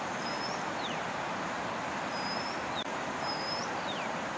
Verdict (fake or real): fake